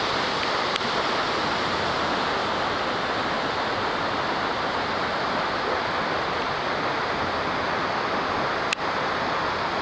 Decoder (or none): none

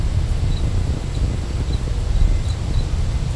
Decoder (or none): none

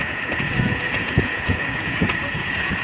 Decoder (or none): vocoder, Vocos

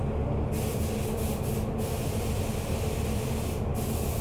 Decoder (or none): none